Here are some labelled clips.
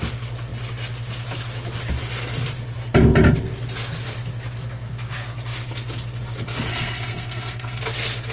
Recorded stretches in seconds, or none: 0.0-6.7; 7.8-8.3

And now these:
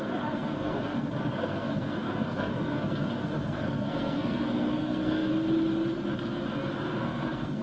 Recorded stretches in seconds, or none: 5.3-7.0

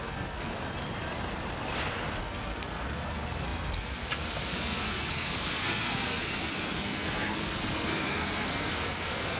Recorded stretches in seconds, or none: 0.5-2.2

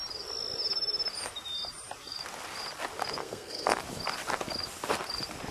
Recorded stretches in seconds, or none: 0.0-3.2; 3.8-5.5